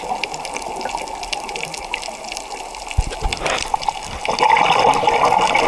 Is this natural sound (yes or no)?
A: yes